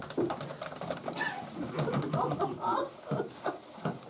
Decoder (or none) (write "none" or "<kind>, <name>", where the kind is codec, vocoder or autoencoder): none